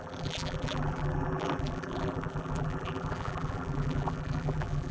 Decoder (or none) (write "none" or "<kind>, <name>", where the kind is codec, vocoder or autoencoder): vocoder, BigVGAN v2